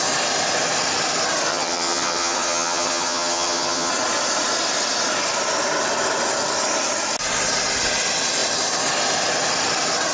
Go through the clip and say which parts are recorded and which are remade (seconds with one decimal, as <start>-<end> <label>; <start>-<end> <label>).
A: 0.0-1.5 recorded; 1.5-3.9 remade; 3.9-10.1 recorded